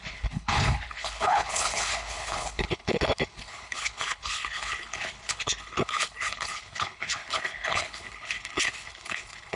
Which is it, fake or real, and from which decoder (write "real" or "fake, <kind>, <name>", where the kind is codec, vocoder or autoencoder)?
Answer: fake, codec, HILCodec